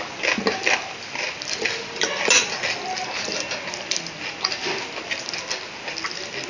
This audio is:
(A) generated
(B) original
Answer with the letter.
B